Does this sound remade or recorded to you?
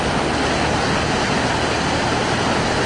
recorded